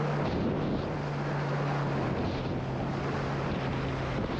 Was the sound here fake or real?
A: real